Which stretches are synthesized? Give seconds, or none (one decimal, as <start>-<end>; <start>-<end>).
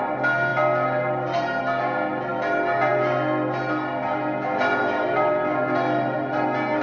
none